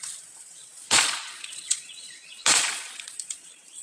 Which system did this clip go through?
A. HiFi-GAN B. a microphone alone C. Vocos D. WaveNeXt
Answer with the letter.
C